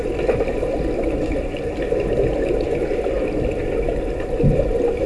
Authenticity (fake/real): real